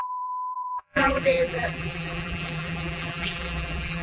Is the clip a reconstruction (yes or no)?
yes